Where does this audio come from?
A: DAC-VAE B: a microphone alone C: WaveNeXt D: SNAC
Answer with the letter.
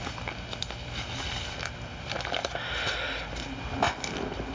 B